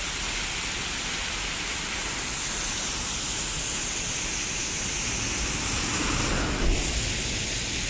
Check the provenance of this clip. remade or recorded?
recorded